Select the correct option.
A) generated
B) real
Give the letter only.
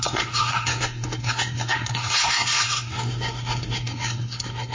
A